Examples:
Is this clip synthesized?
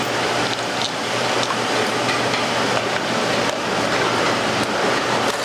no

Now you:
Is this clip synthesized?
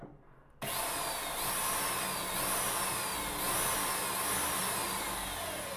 no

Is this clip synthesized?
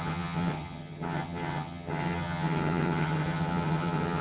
yes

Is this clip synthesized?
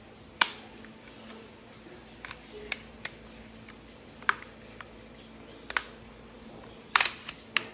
no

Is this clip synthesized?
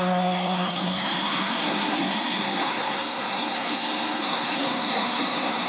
yes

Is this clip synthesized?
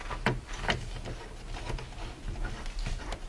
no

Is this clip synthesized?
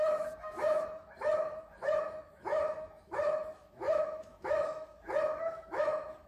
yes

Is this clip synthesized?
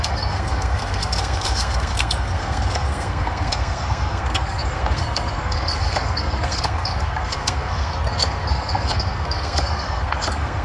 yes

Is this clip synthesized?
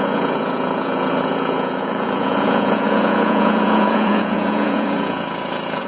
yes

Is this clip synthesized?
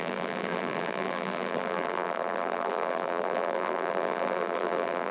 yes